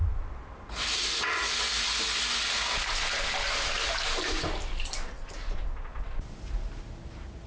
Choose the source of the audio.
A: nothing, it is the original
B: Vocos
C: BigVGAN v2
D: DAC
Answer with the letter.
A